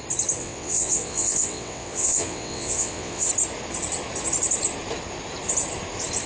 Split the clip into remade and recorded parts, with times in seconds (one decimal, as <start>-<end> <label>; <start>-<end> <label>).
0.0-0.4 recorded; 0.4-3.3 remade; 3.3-6.3 recorded